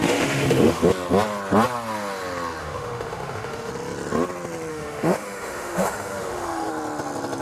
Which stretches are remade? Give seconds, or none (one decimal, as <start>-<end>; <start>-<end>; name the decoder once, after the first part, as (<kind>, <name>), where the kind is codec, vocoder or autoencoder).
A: 0.0-0.8 (autoencoder, DAC-VAE); 2.6-3.7; 4.7-6.7